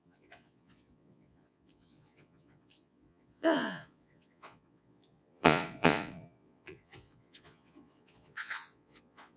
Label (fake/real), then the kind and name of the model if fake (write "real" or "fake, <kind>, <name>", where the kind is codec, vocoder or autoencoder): fake, vocoder, Vocos